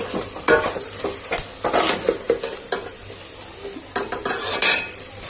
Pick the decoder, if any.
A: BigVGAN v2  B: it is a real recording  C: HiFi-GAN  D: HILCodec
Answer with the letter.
B